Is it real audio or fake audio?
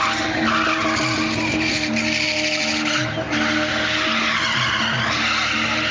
real